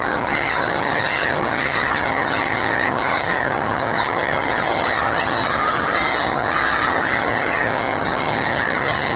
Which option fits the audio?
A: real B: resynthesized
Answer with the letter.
B